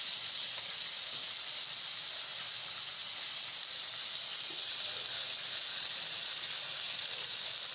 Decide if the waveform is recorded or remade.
recorded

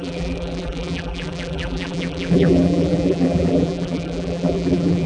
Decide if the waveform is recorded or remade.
remade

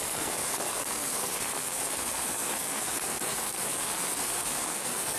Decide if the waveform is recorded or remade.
remade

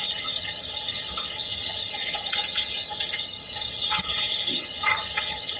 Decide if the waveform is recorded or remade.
remade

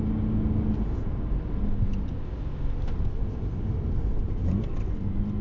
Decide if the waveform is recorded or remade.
recorded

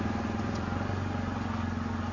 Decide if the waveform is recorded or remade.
recorded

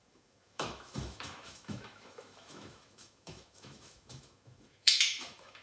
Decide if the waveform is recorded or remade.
remade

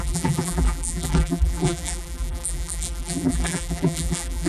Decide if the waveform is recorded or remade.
remade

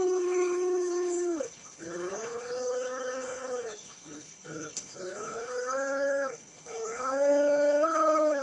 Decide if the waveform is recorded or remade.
remade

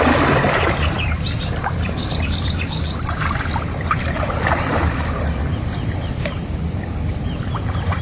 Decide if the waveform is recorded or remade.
remade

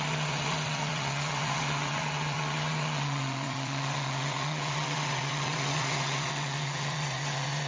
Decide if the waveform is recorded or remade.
remade